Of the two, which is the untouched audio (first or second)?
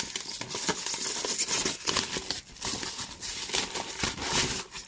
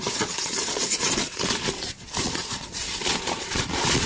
first